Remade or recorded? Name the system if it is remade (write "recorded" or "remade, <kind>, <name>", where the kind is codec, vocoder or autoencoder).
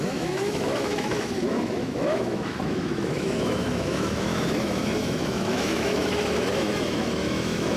remade, autoencoder, DAC-VAE